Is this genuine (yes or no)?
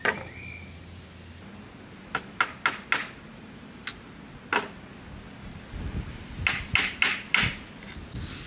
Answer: yes